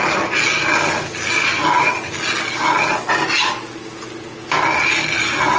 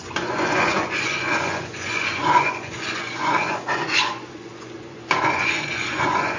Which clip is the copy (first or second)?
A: second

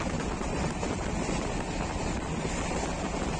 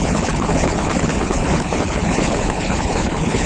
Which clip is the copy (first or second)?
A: second